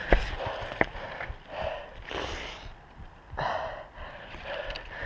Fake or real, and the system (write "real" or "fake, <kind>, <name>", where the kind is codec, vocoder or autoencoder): real